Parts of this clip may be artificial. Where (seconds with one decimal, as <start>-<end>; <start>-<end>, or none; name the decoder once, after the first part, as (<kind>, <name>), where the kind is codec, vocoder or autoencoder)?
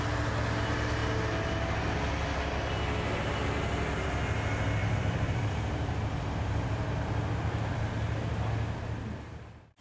4.8-7.9 (vocoder, BigVGAN v2)